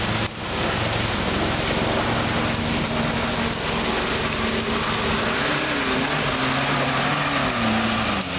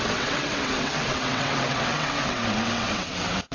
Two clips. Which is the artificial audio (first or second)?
second